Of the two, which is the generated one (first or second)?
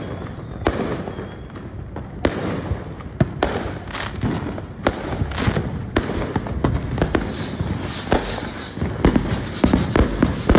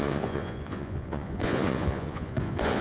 second